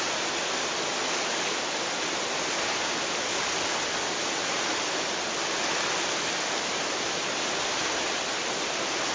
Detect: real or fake real